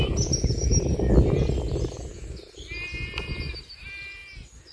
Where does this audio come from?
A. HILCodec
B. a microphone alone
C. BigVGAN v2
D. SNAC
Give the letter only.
B